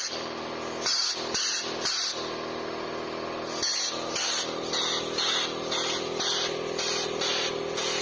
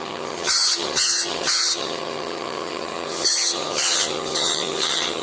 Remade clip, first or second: second